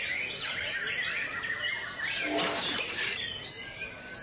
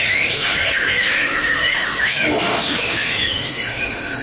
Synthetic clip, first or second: second